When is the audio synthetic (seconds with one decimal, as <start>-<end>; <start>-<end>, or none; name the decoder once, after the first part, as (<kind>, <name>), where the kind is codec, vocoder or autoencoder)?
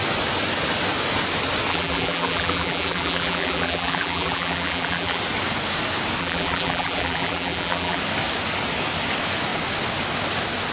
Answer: 1.7-5.2 (vocoder, BigVGAN v2); 6.2-8.0